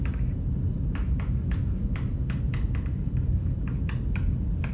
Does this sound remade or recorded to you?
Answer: recorded